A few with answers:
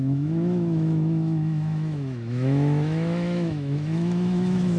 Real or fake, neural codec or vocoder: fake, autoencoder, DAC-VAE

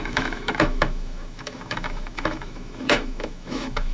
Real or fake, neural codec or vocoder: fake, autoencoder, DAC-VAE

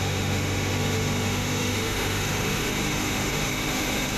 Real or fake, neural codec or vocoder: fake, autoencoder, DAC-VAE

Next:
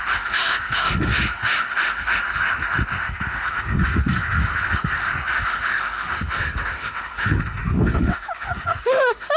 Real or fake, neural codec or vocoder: fake, autoencoder, DAC-VAE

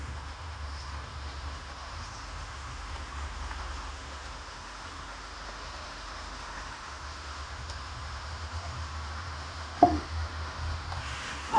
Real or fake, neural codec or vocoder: fake, autoencoder, DAC-VAE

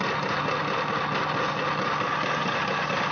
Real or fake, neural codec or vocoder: real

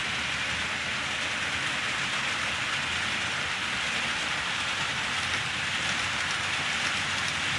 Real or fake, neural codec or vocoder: real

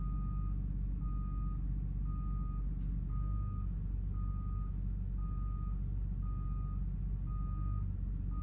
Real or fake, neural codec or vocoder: real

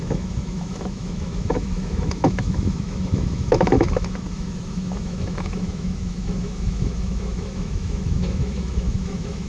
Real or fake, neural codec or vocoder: fake, autoencoder, DAC-VAE